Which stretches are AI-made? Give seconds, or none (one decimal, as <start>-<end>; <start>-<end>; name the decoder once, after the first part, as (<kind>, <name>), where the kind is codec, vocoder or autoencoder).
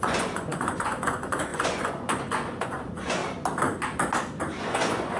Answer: 0.0-3.2 (vocoder, Vocos); 4.6-5.2